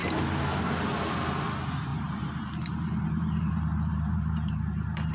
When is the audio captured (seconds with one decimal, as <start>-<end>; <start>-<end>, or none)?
0.0-1.9